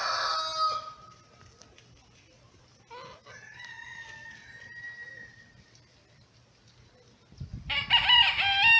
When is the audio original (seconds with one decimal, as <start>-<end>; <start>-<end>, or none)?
0.0-8.8